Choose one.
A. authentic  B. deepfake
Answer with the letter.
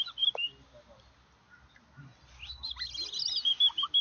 A